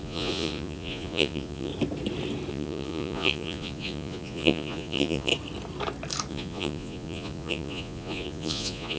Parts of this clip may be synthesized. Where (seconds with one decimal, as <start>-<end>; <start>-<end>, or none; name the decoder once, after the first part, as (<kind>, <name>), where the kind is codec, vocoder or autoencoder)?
0.0-1.7 (vocoder, Vocos); 2.5-5.3; 6.3-9.0